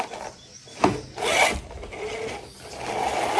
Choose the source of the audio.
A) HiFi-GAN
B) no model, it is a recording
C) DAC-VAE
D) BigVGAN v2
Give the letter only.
B